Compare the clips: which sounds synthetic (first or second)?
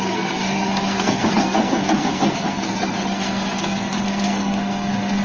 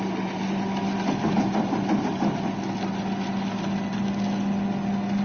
first